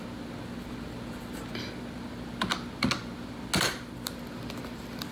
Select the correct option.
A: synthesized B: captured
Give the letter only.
B